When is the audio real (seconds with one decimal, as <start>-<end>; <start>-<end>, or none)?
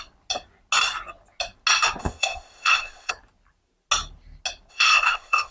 0.0-2.0; 3.1-4.7